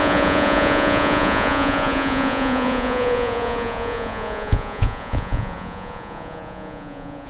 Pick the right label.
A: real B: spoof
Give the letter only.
B